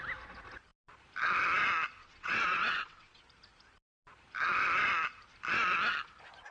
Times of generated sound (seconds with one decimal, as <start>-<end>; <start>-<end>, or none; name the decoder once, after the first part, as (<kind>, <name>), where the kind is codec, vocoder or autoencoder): 2.0-3.2 (vocoder, WaveNeXt)